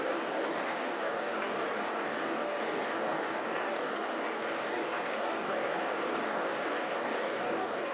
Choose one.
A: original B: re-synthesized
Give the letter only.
B